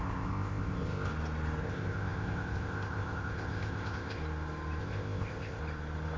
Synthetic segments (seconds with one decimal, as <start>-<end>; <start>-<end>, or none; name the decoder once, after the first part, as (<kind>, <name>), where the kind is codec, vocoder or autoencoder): 0.0-1.1 (codec, ZipCodec); 1.6-4.2; 4.8-5.6